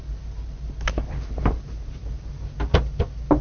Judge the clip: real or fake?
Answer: real